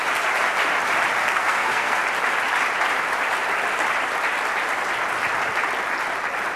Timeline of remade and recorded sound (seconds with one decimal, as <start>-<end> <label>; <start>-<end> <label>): 0.0-1.2 recorded; 1.2-2.0 remade; 2.0-6.6 recorded